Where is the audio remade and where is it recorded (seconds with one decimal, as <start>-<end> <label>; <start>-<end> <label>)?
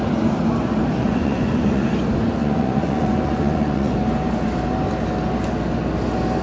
0.0-1.0 recorded; 1.0-1.9 remade; 1.9-2.4 recorded; 2.4-4.0 remade; 4.0-6.4 recorded